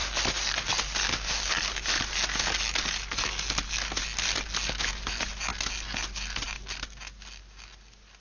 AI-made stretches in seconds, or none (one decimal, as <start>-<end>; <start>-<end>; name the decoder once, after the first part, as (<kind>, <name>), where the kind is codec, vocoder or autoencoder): none